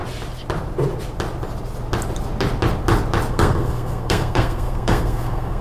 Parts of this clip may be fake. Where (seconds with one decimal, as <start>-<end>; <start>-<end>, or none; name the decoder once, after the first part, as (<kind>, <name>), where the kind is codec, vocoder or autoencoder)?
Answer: 3.3-5.6 (codec, SNAC)